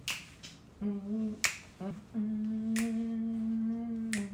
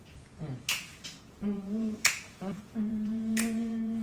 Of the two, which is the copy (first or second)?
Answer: second